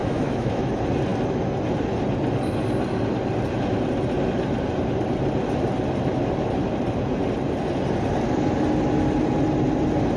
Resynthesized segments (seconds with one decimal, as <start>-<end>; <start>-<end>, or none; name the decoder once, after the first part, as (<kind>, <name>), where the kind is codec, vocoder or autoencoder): 0.0-0.7 (autoencoder, DAC-VAE)